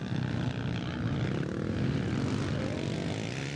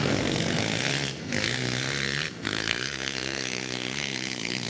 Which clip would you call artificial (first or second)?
second